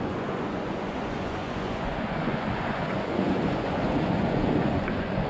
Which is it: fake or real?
fake